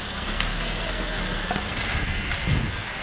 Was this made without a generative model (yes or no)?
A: no